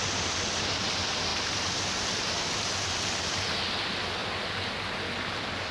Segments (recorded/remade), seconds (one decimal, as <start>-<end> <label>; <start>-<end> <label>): 0.0-5.7 recorded

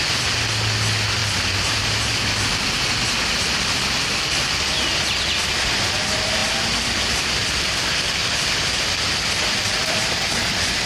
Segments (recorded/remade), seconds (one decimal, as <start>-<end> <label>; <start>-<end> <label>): 0.0-10.9 recorded

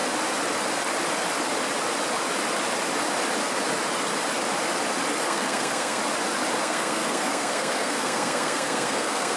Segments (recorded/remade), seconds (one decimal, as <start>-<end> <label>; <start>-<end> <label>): 0.0-5.2 recorded; 5.2-6.0 remade; 6.0-6.6 recorded; 6.6-9.4 remade

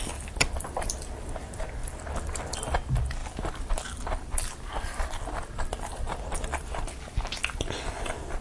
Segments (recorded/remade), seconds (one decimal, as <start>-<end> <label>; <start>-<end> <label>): 0.0-8.4 recorded

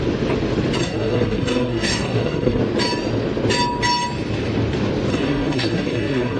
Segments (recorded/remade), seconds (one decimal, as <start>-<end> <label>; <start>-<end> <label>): 0.0-0.8 recorded; 0.8-2.6 remade; 2.6-5.1 recorded; 5.1-6.4 remade